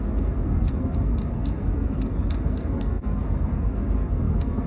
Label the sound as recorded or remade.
remade